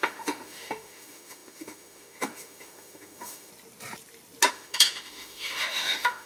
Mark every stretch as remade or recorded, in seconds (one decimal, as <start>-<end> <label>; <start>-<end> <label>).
0.0-3.5 remade; 3.5-4.5 recorded; 4.5-6.3 remade